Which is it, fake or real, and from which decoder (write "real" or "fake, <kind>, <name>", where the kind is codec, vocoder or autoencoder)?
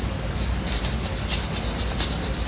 real